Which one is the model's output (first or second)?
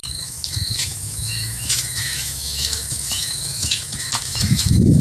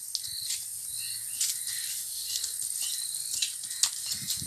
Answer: first